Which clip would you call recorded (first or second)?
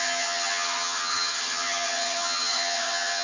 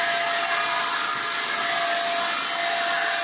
second